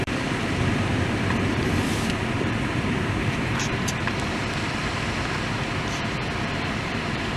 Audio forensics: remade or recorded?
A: remade